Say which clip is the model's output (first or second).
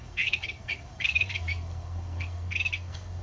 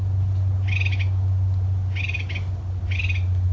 first